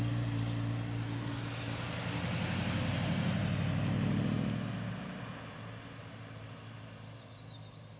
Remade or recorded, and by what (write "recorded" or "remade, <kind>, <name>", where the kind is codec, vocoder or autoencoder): recorded